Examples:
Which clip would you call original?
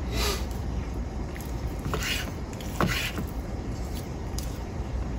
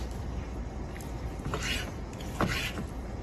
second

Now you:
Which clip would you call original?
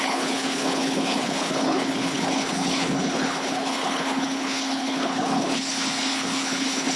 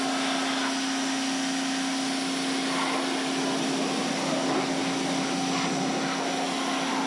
second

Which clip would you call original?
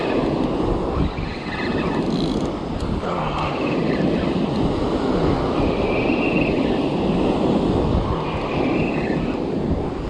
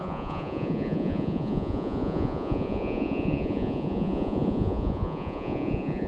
first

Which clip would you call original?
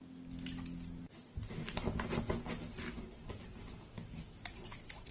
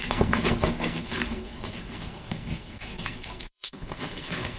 first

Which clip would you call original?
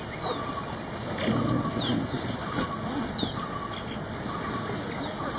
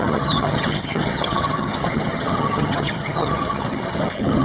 first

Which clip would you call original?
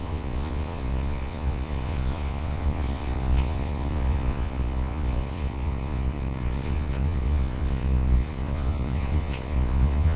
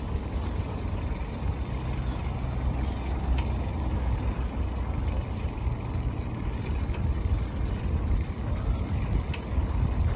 second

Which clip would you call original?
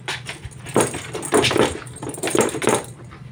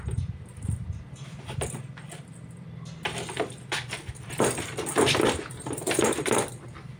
first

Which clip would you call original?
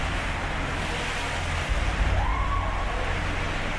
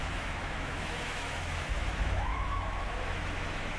first